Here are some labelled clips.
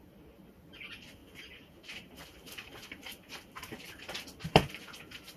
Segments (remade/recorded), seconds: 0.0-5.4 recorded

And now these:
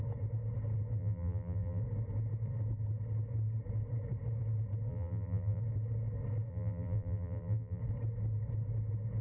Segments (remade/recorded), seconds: 0.0-1.0 recorded; 1.0-1.8 remade; 1.8-4.9 recorded; 4.9-5.6 remade; 5.6-6.5 recorded; 6.5-7.8 remade; 7.8-9.2 recorded

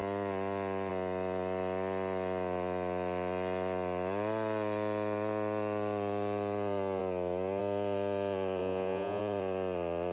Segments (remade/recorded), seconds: 0.0-8.6 recorded; 8.6-9.2 remade; 9.2-10.1 recorded

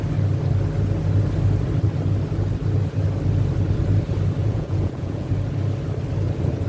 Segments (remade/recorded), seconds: 0.0-4.4 recorded; 4.4-5.3 remade; 5.3-6.7 recorded

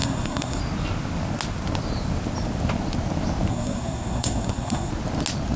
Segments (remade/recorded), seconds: 0.0-0.6 remade; 0.6-3.5 recorded; 3.5-4.9 remade; 4.9-5.6 recorded

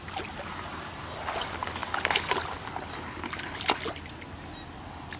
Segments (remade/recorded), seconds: 0.0-5.2 recorded

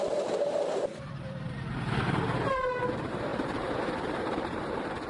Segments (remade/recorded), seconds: 0.0-0.8 remade; 0.8-1.7 recorded; 1.7-5.1 remade

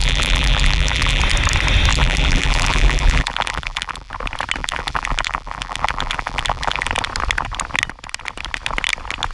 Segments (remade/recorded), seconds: 0.0-1.2 remade; 1.2-1.9 recorded; 1.9-4.1 remade; 4.1-4.6 recorded; 4.6-6.9 remade; 6.9-9.3 recorded